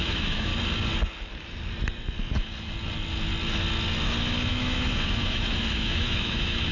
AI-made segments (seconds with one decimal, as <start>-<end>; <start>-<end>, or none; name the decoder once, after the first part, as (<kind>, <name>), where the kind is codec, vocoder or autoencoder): 0.0-0.5 (autoencoder, DAC-VAE); 4.5-6.7